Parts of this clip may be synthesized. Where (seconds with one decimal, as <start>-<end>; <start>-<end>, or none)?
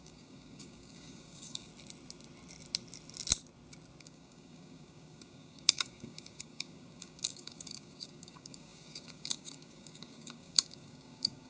0.0-1.7; 4.0-11.5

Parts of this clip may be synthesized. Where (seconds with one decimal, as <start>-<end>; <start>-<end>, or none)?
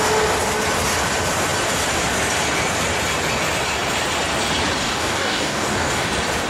4.8-6.0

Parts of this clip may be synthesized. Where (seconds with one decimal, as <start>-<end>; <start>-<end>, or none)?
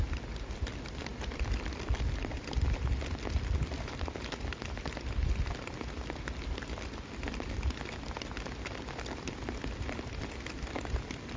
none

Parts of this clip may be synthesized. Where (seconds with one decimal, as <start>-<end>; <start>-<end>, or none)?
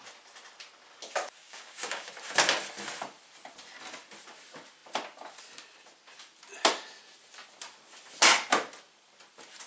1.4-2.1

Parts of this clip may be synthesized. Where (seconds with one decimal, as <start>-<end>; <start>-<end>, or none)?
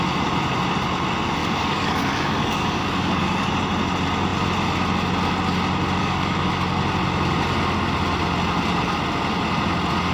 1.4-3.5; 6.0-6.5